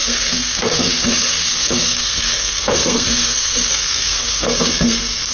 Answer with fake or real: fake